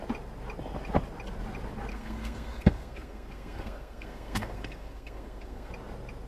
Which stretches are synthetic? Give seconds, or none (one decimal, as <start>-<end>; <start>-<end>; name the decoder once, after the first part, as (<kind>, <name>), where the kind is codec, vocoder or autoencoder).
1.9-5.7 (codec, SNAC)